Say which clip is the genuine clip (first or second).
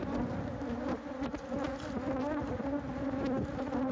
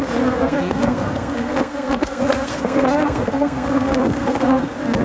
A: first